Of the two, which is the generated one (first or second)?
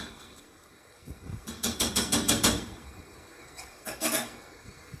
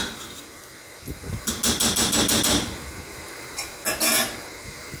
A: first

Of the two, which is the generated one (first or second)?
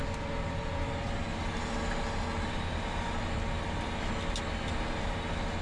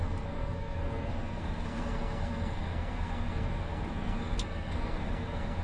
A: second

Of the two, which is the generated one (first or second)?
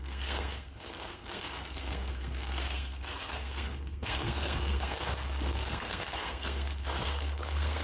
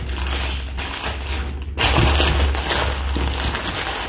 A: first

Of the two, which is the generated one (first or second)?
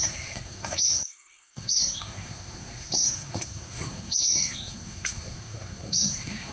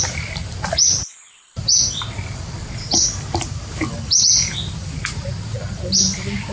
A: first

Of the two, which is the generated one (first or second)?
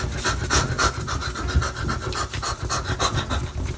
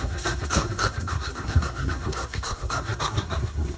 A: second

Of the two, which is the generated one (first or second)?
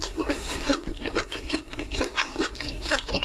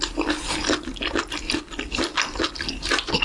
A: first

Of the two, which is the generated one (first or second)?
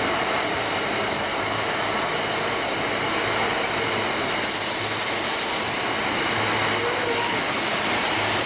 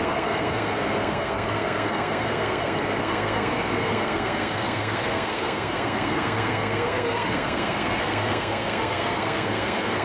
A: second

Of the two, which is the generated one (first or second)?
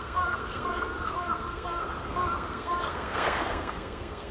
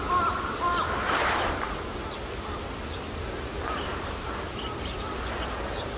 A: first